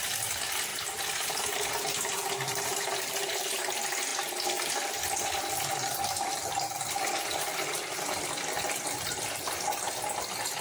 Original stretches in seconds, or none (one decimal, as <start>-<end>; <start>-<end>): 0.0-0.7; 3.6-10.6